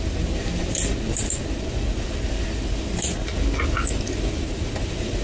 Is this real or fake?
real